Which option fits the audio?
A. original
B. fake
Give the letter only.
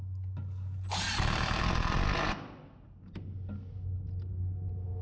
A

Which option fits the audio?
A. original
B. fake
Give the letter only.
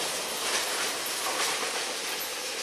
A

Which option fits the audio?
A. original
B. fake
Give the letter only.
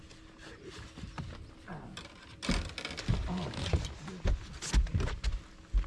A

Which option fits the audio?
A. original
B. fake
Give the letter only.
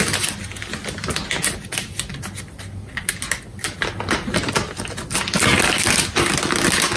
A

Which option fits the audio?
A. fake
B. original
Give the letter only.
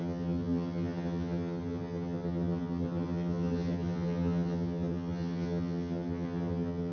A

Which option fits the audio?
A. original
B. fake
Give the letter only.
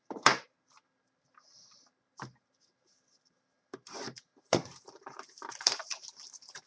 B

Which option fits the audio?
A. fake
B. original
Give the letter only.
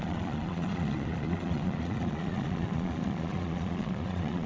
A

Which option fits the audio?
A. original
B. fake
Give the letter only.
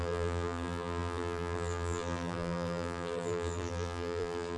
B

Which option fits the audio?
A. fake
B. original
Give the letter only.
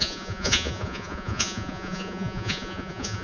A